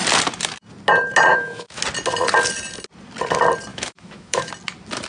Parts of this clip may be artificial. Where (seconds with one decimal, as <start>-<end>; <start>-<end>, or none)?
1.3-1.8; 3.7-4.5